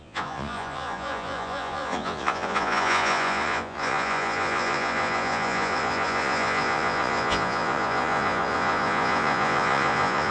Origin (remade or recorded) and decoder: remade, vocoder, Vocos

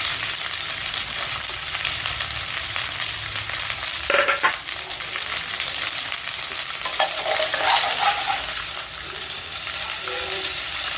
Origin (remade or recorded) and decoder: remade, vocoder, BigVGAN v2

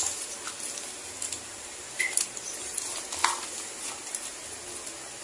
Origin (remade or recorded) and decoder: recorded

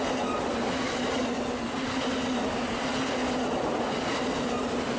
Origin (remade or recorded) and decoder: recorded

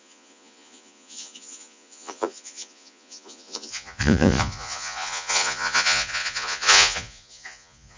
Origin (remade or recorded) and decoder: remade, vocoder, Vocos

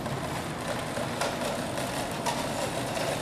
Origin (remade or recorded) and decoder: recorded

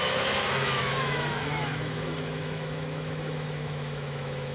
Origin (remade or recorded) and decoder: remade, autoencoder, DAC-VAE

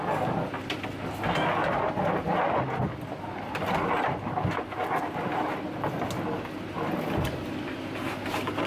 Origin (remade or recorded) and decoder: recorded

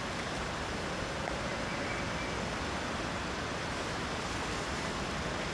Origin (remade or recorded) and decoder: recorded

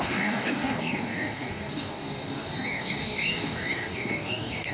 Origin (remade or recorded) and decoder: remade, codec, DAC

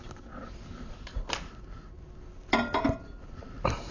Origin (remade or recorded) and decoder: recorded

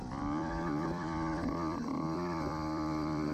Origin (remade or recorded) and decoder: remade, vocoder, BigVGAN v2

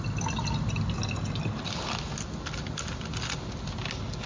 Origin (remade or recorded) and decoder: recorded